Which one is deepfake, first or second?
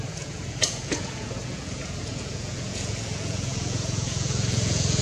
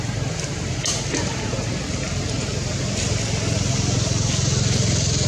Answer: first